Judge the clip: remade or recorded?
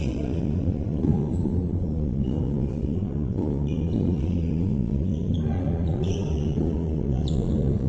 remade